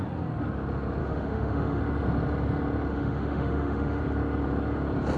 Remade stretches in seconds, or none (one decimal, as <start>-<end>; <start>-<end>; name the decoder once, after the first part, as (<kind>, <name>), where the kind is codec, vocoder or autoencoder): 1.0-1.8 (autoencoder, DAC-VAE); 2.9-4.0